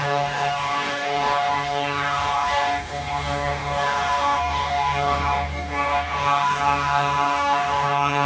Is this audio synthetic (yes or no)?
yes